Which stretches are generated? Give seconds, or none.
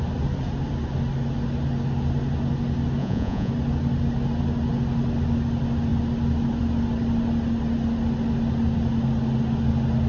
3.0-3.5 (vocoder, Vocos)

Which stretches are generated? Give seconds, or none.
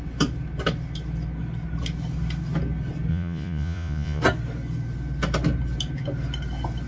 3.1-4.2 (vocoder, Vocos)